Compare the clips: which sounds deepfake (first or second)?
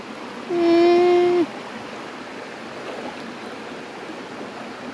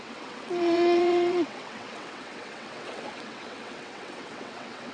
second